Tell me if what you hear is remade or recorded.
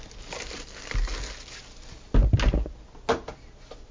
recorded